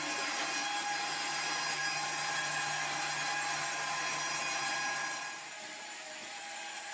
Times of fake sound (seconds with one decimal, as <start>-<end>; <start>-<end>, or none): none